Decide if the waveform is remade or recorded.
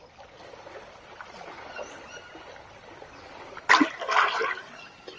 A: recorded